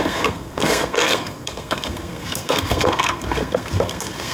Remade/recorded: remade